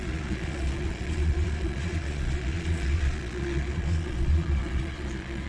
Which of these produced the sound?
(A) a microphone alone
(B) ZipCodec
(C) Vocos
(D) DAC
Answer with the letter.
C